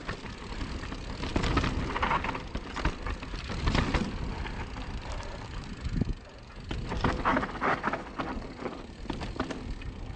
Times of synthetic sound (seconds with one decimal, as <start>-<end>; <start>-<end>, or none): 7.3-9.2